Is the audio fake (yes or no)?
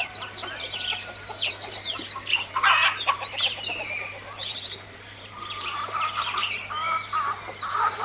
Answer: yes